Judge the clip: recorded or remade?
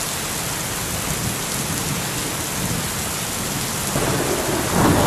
recorded